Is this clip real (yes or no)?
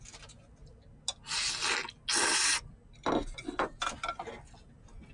yes